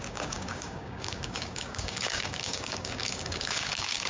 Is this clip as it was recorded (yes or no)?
no